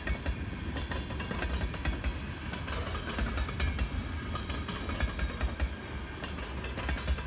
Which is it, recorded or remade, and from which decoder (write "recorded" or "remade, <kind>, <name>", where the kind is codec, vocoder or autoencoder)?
recorded